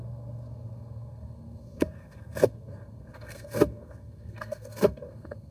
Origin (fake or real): fake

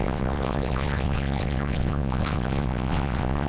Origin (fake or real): fake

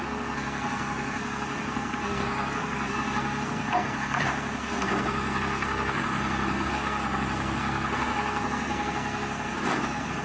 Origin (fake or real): fake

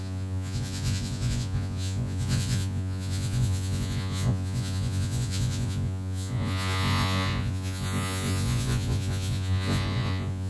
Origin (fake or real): fake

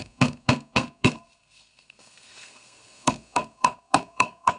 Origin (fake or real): fake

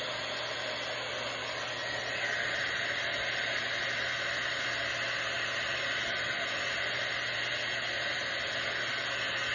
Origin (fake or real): real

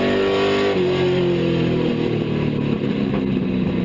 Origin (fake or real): real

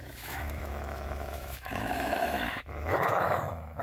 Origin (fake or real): fake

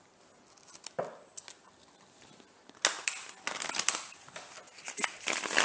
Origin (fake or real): real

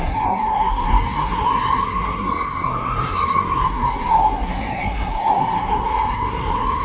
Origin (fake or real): fake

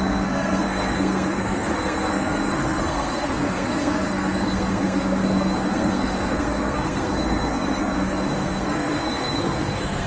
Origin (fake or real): fake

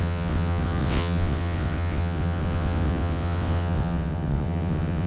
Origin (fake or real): fake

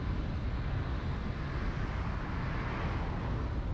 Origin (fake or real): real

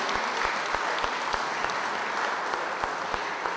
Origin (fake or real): real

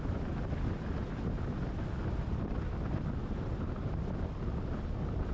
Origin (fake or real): real